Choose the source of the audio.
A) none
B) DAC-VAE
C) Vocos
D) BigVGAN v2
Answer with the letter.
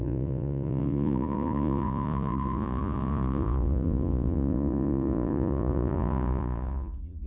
C